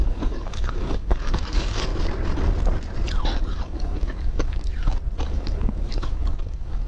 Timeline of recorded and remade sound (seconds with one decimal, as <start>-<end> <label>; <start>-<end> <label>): 0.0-1.9 remade; 1.9-3.4 recorded; 3.4-4.7 remade; 4.7-5.3 recorded; 5.3-6.9 remade